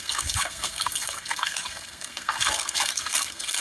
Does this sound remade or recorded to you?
remade